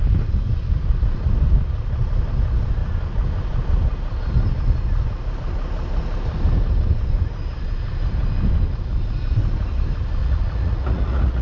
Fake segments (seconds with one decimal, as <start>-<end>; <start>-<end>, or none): 10.2-11.4